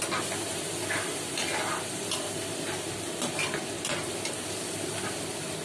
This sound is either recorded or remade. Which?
recorded